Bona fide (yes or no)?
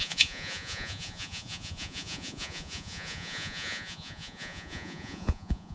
no